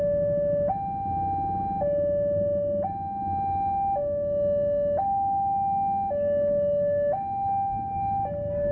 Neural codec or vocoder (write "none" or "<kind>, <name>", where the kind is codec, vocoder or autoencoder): none